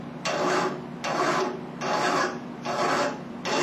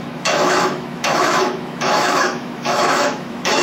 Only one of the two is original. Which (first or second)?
first